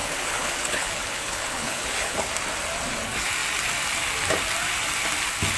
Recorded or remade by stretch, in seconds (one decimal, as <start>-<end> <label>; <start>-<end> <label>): 0.0-2.3 remade; 2.3-5.6 recorded

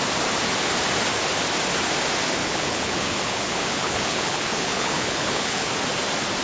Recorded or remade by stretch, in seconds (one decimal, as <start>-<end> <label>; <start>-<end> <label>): 0.0-2.4 recorded; 2.4-5.7 remade; 5.7-6.4 recorded

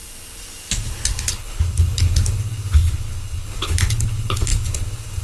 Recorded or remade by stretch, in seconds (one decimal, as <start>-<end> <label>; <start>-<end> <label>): 0.0-1.3 recorded; 1.3-5.2 remade

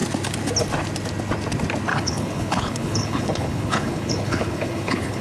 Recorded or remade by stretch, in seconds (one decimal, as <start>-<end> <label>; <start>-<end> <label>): 0.0-1.9 recorded; 1.9-5.2 remade

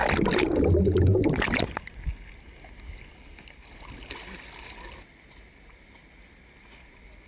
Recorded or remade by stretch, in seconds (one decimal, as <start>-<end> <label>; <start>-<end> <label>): 0.0-7.3 recorded

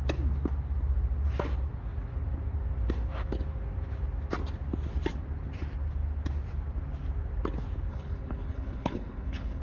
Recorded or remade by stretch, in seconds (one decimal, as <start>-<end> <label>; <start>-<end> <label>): 0.0-7.9 recorded; 7.9-9.6 remade

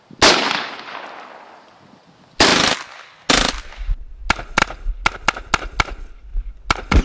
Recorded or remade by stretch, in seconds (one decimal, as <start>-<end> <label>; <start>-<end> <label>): 0.0-7.0 recorded